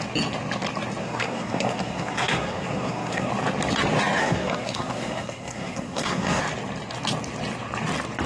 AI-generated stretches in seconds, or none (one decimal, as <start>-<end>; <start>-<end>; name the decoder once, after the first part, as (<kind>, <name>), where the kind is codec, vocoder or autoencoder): 1.0-3.3 (codec, SNAC); 4.2-6.4